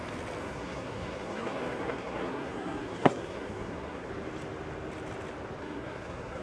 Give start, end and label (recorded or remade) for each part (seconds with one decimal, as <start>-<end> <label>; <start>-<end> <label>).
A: 0.0-0.4 recorded; 0.4-4.1 remade; 4.1-5.6 recorded; 5.6-6.4 remade